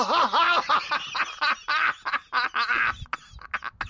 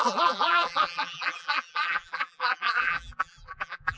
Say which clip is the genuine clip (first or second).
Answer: first